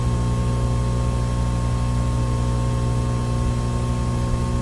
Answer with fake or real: real